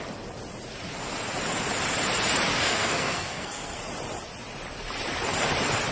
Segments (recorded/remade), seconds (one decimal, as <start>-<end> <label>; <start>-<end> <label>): 0.0-2.5 recorded; 2.5-3.8 remade; 3.8-5.9 recorded